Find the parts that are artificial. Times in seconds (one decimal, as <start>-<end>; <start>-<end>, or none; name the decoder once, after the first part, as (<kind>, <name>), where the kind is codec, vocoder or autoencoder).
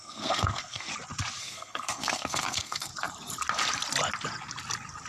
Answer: 0.0-0.9 (codec, SNAC); 1.4-2.9